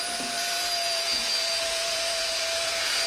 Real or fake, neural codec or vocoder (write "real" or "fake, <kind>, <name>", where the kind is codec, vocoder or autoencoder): fake, vocoder, Vocos